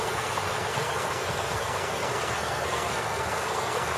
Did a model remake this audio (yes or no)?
yes